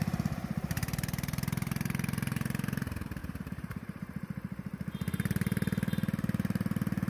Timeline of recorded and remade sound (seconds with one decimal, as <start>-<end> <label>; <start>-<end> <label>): 0.0-7.1 remade

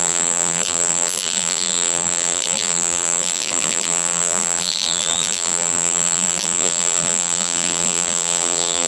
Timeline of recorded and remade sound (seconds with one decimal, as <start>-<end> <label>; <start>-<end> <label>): 0.0-8.9 remade

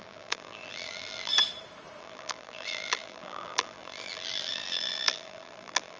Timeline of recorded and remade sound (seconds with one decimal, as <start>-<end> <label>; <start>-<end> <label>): 0.0-1.3 remade; 1.3-2.0 recorded; 2.0-6.0 remade

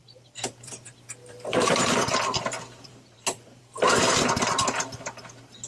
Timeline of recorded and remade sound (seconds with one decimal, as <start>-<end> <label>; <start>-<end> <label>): 0.0-0.7 remade; 0.7-1.2 recorded; 1.2-3.6 remade; 3.6-5.7 recorded

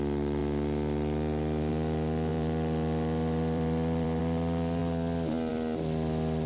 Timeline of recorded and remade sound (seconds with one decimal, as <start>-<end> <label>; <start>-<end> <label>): 0.0-0.4 recorded; 0.4-1.7 remade; 1.7-2.3 recorded; 2.3-4.2 remade; 4.2-6.5 recorded

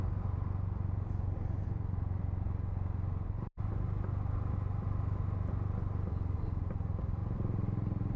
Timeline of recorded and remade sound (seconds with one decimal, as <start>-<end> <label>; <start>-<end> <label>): 0.0-7.2 recorded; 7.2-8.2 remade

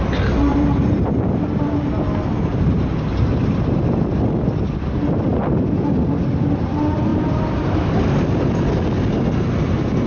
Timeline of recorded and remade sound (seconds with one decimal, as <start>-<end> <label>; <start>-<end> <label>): 0.0-0.5 recorded; 0.5-1.4 remade; 1.4-2.5 recorded; 2.5-3.8 remade; 3.8-7.1 recorded; 7.1-8.0 remade; 8.0-10.1 recorded

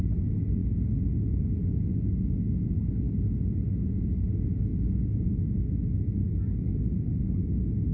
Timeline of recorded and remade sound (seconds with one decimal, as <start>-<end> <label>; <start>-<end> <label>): 0.0-7.9 recorded